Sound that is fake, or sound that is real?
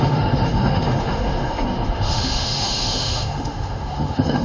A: fake